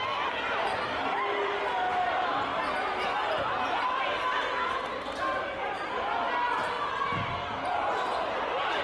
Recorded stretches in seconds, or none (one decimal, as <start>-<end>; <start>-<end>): 0.0-8.8

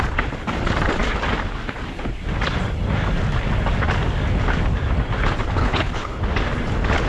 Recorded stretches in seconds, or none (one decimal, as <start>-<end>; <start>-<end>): 0.0-5.6; 6.2-7.1

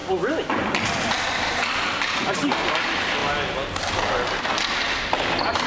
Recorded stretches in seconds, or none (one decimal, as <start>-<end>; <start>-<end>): 0.0-5.7